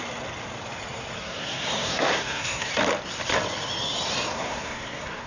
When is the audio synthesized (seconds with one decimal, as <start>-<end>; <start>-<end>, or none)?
1.2-2.7; 4.3-5.3